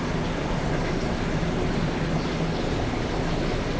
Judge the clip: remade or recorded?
recorded